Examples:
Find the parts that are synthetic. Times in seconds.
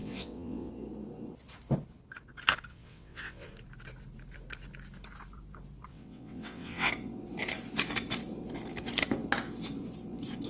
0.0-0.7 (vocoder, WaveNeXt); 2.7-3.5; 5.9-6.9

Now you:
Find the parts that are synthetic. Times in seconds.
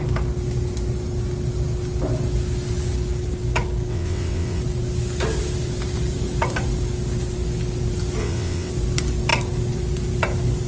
3.9-4.6 (vocoder, WaveNeXt); 8.2-8.7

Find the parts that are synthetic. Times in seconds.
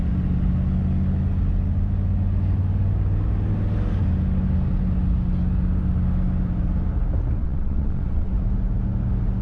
7.4-8.3 (vocoder, WaveNeXt)